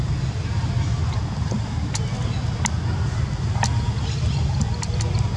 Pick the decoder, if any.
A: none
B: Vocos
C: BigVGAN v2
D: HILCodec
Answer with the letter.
A